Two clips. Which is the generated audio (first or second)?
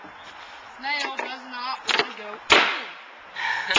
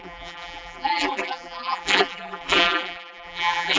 second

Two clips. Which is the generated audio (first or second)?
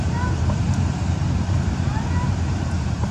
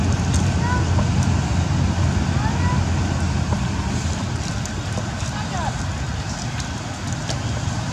first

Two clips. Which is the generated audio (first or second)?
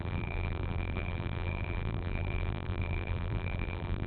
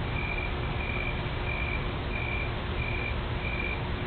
first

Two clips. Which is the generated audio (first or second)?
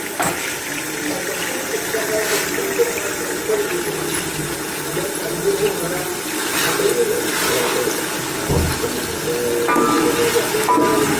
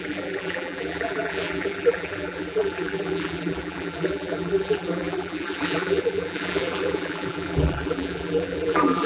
second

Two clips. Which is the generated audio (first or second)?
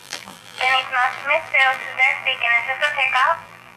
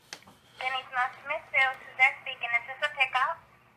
first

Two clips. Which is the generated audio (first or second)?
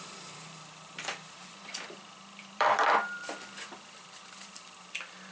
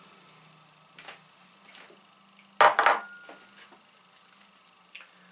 first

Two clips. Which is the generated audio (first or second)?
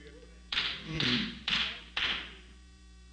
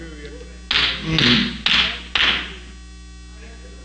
first